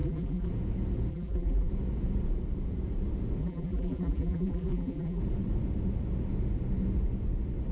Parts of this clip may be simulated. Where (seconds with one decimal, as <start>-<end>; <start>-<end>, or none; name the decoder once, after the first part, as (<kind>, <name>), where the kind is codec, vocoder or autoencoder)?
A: 0.0-0.5 (vocoder, BigVGAN v2); 1.1-1.7; 3.4-5.2